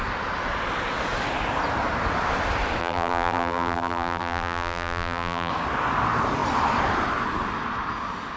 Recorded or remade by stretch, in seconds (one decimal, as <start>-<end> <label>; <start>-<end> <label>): 0.0-2.8 recorded; 2.8-5.5 remade; 5.5-8.4 recorded